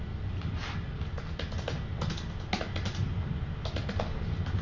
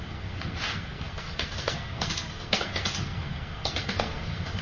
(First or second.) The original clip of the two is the first